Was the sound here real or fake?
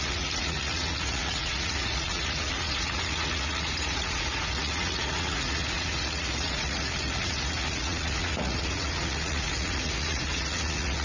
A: fake